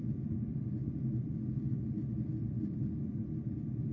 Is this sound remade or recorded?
recorded